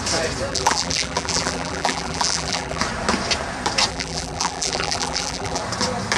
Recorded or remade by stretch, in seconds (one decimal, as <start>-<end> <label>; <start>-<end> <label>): 0.0-0.5 recorded; 0.5-2.8 remade; 2.8-3.9 recorded; 3.9-5.6 remade; 5.6-6.2 recorded